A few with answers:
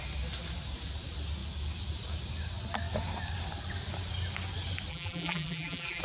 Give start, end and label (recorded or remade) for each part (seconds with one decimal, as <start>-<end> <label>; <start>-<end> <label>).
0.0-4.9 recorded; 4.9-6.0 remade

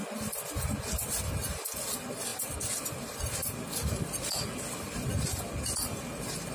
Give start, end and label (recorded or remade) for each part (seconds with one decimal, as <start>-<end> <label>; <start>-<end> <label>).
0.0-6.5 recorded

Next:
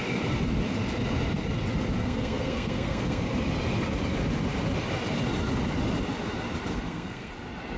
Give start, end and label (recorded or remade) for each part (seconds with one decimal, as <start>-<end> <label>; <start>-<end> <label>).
0.0-2.0 recorded; 2.0-3.2 remade; 3.2-6.7 recorded; 6.7-7.3 remade; 7.3-7.8 recorded